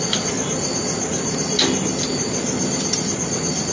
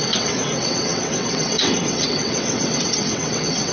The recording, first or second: first